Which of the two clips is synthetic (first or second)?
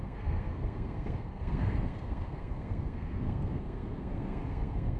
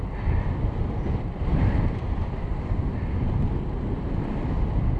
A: first